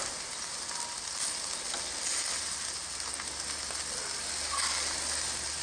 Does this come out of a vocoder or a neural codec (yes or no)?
no